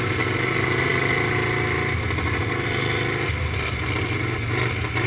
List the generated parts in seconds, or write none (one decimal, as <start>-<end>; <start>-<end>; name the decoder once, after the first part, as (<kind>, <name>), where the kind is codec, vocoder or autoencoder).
none

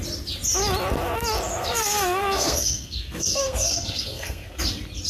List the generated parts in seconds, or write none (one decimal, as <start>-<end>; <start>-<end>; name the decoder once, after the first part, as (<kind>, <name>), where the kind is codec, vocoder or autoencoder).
1.5-4.6 (codec, SNAC)